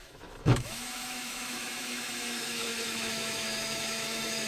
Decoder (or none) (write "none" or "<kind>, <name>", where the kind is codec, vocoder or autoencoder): autoencoder, DAC-VAE